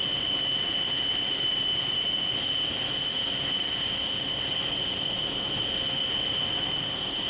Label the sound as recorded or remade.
recorded